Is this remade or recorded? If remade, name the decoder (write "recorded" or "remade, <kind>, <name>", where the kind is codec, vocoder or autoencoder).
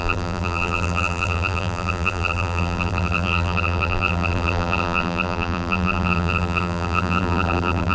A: remade, vocoder, BigVGAN v2